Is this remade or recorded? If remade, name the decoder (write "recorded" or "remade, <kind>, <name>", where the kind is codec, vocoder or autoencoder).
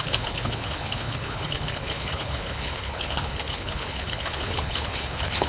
remade, codec, HILCodec